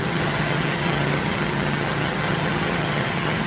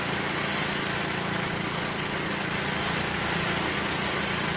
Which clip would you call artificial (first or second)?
first